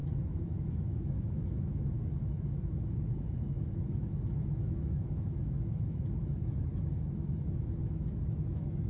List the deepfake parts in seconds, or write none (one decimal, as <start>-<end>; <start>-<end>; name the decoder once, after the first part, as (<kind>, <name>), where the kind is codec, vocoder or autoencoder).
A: 0.0-8.9 (autoencoder, DAC-VAE)